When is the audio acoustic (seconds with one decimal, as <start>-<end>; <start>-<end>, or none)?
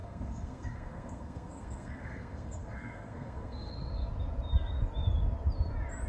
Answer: 3.7-6.1